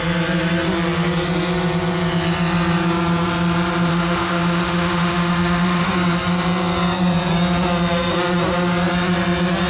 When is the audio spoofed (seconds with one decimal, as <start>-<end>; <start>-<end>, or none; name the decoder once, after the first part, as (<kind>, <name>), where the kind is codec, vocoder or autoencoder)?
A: 3.9-5.9 (autoencoder, DAC-VAE)